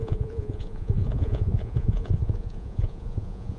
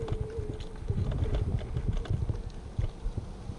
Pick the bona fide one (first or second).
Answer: second